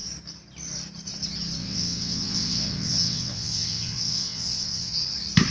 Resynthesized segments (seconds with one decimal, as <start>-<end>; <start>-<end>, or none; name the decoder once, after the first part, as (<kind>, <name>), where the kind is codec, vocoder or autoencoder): 1.6-4.9 (vocoder, WaveNeXt)